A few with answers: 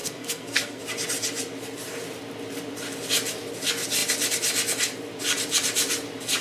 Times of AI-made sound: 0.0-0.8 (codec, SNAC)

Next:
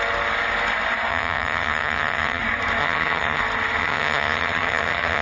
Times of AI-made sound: 1.1-2.4 (vocoder, HiFi-GAN); 2.8-3.4; 3.8-5.2

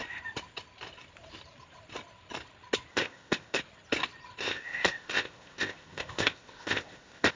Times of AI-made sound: 2.9-3.6 (codec, ZipCodec); 4.4-7.4

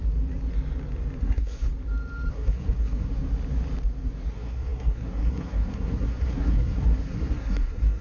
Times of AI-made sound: 1.2-1.7 (codec, SNAC); 2.3-3.2; 4.3-8.0

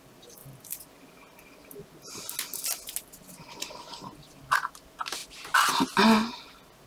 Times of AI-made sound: none

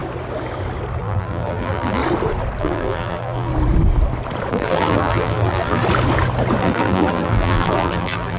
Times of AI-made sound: 1.0-2.0 (vocoder, BigVGAN v2); 2.6-3.5; 4.5-5.8; 6.6-8.4

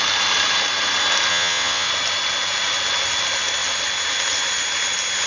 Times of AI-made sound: 1.3-1.9 (vocoder, WaveNeXt)

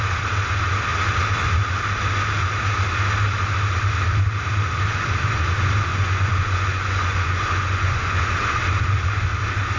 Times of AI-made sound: 5.9-8.2 (vocoder, Vocos)